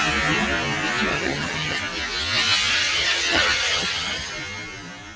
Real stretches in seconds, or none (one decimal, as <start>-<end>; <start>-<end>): 0.0-1.1; 1.8-2.7; 4.3-5.2